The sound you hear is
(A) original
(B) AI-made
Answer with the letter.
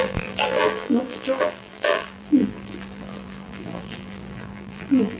B